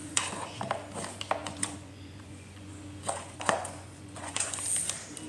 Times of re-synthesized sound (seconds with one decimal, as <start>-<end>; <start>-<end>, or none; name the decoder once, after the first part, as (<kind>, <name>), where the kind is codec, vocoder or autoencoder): 0.0-0.6 (vocoder, Vocos); 1.4-4.6

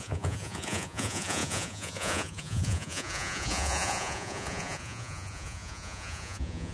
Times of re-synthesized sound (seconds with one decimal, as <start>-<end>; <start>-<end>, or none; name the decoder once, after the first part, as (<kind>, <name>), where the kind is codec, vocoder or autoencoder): 0.0-6.7 (vocoder, Vocos)

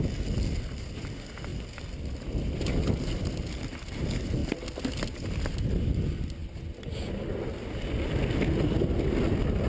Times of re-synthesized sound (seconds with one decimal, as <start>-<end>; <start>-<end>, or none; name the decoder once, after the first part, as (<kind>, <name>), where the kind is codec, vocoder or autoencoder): none

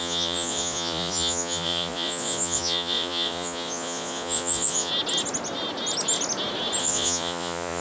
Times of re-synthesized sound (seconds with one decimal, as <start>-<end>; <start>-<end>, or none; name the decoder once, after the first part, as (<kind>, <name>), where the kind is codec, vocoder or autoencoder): 0.0-4.9 (vocoder, Vocos); 6.8-7.8

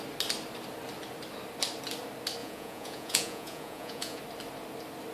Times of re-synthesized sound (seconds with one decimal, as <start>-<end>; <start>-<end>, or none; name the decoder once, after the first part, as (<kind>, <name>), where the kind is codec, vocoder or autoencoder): 2.4-4.2 (vocoder, Vocos)